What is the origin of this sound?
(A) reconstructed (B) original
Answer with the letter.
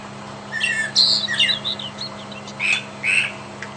B